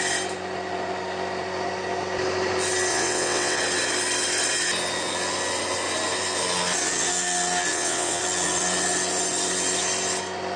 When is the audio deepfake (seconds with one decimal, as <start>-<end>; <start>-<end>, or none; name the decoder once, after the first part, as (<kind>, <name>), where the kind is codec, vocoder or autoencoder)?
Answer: 2.9-3.6 (vocoder, WaveNeXt); 7.7-8.2